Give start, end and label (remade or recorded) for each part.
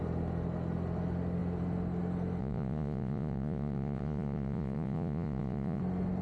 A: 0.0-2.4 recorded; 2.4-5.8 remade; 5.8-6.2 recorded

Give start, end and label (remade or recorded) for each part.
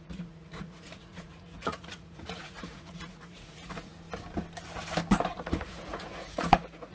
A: 0.0-3.9 remade; 3.9-5.4 recorded; 5.4-6.9 remade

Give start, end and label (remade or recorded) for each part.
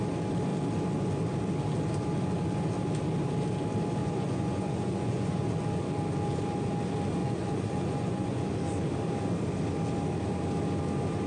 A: 0.0-4.0 recorded; 4.0-5.5 remade; 5.5-7.2 recorded; 7.2-8.5 remade; 8.5-11.3 recorded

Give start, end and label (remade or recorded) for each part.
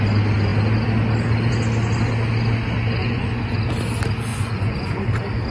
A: 0.0-3.0 recorded; 3.0-3.7 remade; 3.7-4.3 recorded; 4.3-5.1 remade; 5.1-5.5 recorded